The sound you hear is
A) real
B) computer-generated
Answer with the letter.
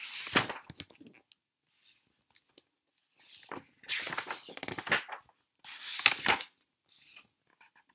A